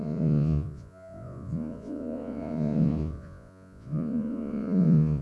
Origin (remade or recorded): remade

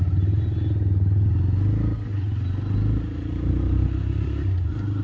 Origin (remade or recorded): recorded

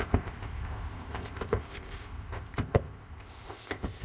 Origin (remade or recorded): remade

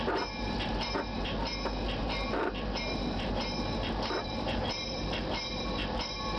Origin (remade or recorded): remade